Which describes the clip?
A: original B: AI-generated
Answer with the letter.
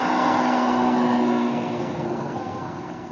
B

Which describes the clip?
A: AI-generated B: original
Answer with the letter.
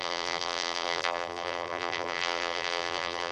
A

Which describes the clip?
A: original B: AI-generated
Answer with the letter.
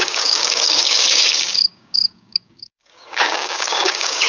B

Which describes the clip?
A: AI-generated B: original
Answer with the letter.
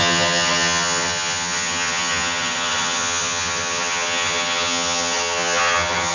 A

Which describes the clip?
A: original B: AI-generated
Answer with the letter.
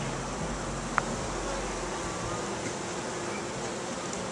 A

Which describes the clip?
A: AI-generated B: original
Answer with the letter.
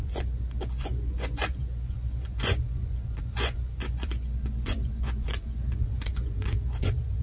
A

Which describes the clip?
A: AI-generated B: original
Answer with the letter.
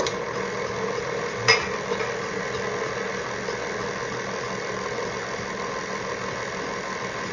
B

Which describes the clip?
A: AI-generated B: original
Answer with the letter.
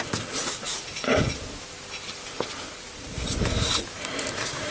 B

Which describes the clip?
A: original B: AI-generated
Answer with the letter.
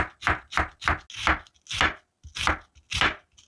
A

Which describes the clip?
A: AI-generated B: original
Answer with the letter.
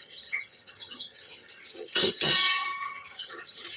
A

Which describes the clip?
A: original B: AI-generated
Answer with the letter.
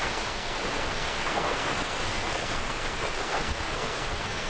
B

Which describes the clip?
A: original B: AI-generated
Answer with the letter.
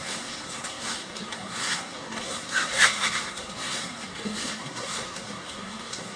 B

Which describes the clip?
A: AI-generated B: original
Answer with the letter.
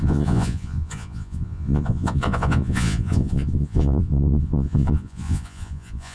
A